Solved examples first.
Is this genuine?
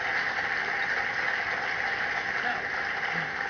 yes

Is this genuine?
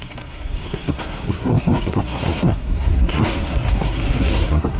no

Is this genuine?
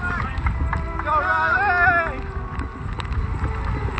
yes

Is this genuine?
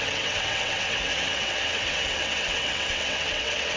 no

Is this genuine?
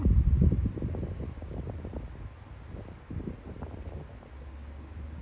yes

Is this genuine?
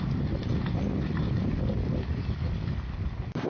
yes